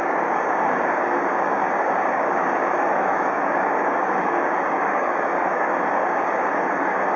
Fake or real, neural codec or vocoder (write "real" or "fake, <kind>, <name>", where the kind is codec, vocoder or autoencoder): fake, codec, DAC